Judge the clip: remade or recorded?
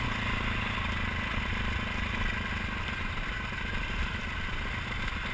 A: recorded